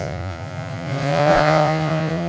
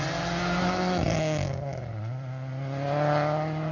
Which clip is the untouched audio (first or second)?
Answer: second